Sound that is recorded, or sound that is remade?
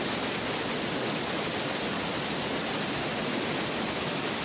recorded